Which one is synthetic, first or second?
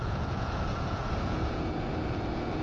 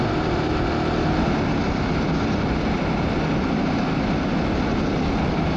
first